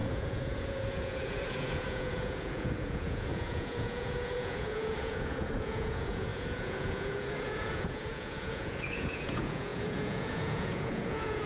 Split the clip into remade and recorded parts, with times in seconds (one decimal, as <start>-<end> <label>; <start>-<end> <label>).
0.0-11.5 remade